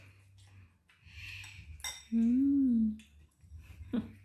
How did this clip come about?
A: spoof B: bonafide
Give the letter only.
B